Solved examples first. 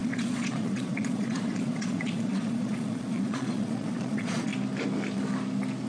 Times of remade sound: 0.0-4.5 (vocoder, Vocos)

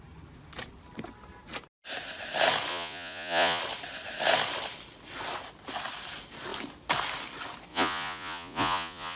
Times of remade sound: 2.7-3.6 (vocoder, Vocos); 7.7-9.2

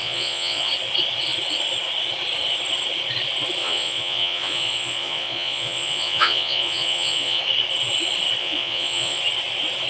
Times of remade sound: 0.0-0.7 (vocoder, Vocos); 3.6-7.4; 8.4-9.2